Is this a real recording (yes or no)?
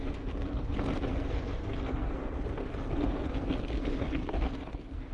no